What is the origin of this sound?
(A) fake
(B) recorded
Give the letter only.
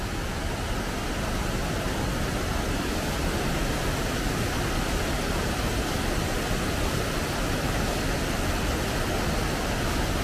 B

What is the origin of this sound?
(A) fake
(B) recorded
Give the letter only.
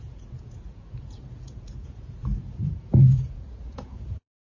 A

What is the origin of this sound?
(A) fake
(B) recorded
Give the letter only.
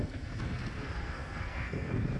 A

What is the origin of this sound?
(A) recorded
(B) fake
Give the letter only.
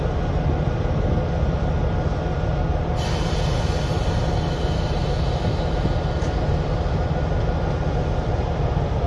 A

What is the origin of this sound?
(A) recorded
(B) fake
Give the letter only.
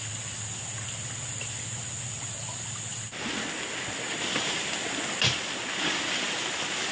A